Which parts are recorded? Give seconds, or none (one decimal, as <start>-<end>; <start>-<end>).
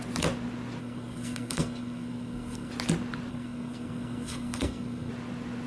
0.0-0.8; 2.7-3.3; 5.1-5.7